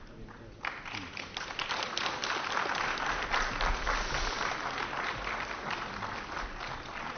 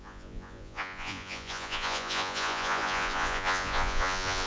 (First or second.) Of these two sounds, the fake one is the second